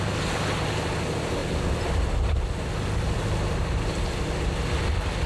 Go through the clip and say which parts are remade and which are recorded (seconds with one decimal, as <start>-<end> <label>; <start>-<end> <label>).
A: 0.0-1.4 recorded; 1.4-2.5 remade; 2.5-5.3 recorded